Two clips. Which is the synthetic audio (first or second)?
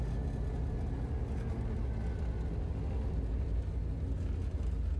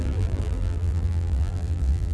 second